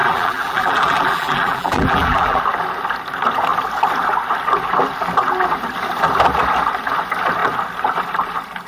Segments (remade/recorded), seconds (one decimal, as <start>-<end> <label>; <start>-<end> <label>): 0.0-2.4 remade; 2.4-8.7 recorded